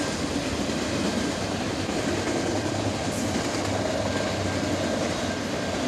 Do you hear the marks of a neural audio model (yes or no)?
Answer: no